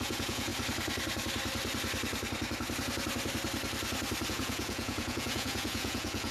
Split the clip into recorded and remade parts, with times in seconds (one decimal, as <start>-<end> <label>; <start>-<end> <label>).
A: 0.0-0.5 remade; 0.5-4.3 recorded; 4.3-6.3 remade